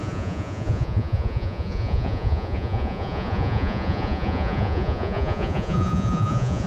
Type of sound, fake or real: fake